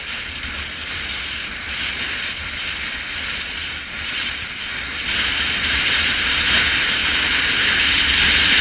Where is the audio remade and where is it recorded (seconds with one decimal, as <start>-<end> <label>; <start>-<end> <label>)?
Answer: 0.0-3.3 recorded; 3.3-4.6 remade; 4.6-5.1 recorded; 5.1-7.0 remade; 7.0-7.7 recorded; 7.7-8.6 remade